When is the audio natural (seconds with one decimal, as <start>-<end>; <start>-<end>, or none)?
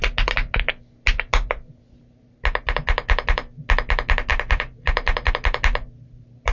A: 0.0-4.3; 5.3-6.5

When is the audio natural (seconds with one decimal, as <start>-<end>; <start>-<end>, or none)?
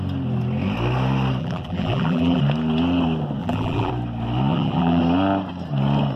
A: 0.0-1.4; 2.4-3.4; 3.9-4.5; 5.0-6.2